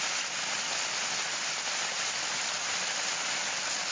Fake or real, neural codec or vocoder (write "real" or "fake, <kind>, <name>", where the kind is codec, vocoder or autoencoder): real